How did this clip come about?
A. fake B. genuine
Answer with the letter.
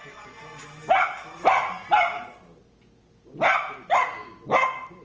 B